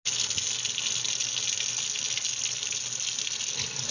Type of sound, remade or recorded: recorded